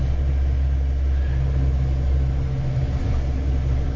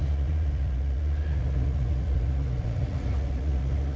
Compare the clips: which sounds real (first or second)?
first